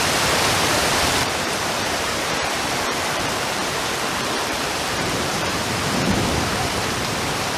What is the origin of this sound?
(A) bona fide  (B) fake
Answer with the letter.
B